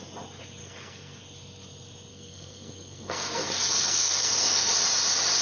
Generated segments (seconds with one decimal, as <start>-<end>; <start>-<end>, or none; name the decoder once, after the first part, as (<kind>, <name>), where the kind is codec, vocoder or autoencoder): 0.6-1.2 (codec, SNAC); 2.1-4.7